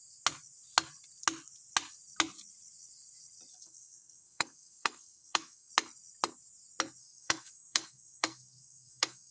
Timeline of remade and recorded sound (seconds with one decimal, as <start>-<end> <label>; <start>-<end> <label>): 0.0-3.5 recorded; 3.5-5.7 remade; 5.7-7.0 recorded; 7.0-9.3 remade